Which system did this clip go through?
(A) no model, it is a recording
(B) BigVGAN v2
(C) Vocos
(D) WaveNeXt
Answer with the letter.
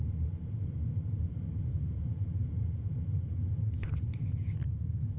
B